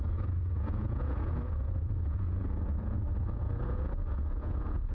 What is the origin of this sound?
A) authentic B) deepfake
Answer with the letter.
B